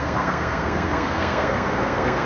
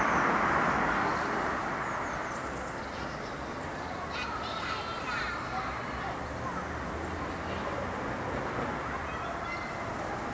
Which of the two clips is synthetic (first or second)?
first